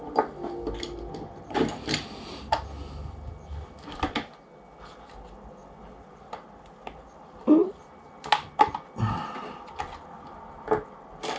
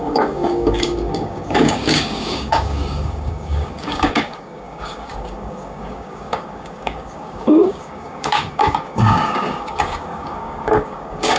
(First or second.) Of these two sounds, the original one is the first